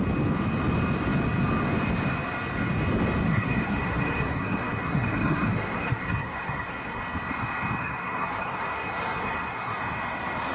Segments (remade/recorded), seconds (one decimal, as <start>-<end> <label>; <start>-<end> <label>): 0.0-3.2 recorded; 3.2-7.0 remade; 7.0-7.8 recorded; 7.8-9.8 remade; 9.8-10.5 recorded